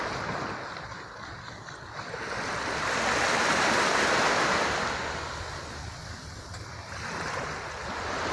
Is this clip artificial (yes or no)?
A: no